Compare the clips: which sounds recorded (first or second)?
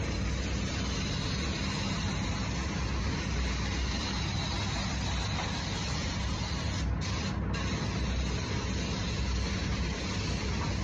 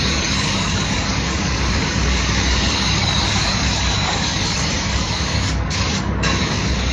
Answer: first